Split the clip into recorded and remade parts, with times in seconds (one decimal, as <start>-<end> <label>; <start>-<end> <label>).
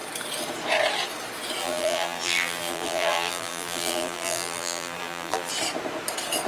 0.0-1.6 recorded; 1.6-5.5 remade; 5.5-6.5 recorded